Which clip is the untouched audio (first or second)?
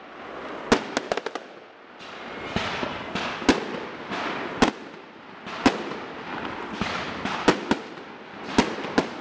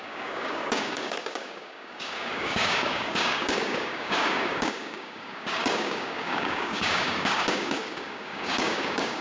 first